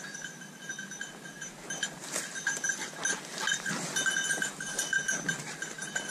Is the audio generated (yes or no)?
no